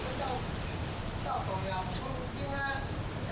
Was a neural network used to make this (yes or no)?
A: no